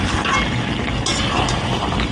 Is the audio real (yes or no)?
yes